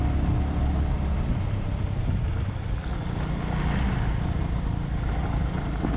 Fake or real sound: real